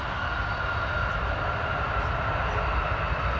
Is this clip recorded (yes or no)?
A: yes